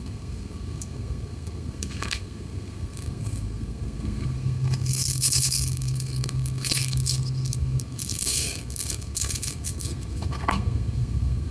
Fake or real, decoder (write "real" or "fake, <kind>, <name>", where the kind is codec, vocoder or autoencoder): fake, codec, SNAC